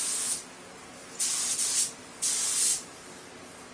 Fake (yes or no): no